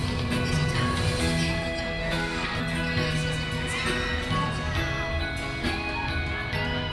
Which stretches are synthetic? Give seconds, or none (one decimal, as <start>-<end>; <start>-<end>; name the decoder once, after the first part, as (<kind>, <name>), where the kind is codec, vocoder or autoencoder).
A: 2.0-2.6 (codec, SNAC)